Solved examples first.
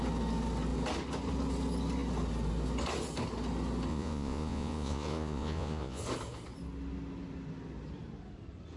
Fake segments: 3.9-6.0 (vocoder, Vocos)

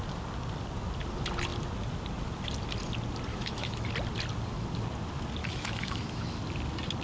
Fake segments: 3.3-3.9 (autoencoder, DAC-VAE); 5.4-6.4

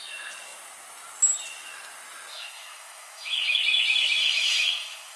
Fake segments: 2.3-3.6 (autoencoder, DAC-VAE); 4.2-5.2

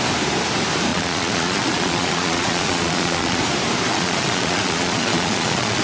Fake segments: 0.9-3.4 (vocoder, Vocos); 3.9-5.8